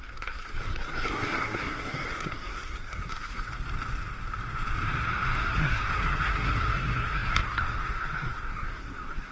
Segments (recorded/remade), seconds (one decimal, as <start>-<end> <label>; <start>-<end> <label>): 0.0-3.5 remade; 3.5-5.4 recorded; 5.4-9.3 remade